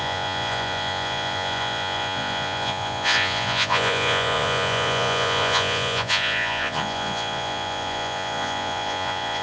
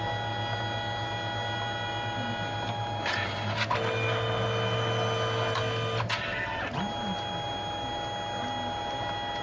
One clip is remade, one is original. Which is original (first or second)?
second